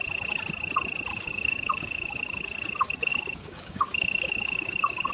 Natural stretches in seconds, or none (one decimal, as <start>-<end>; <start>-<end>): 0.0-1.1; 2.3-3.1